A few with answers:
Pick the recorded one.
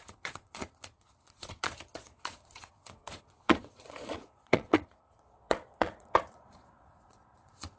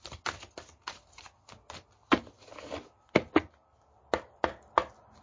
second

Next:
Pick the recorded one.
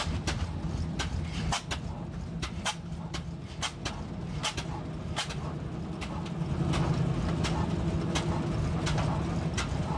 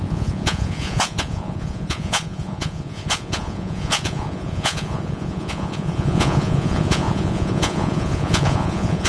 first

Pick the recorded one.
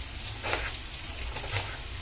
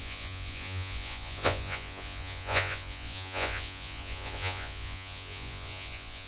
first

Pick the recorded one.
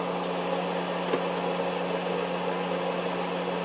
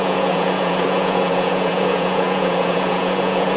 first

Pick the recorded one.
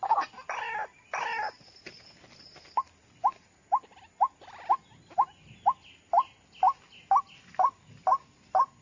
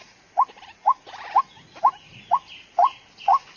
first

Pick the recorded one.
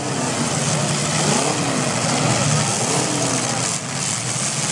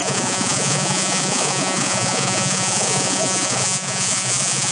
first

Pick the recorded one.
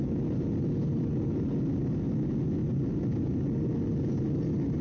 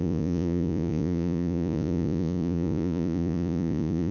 first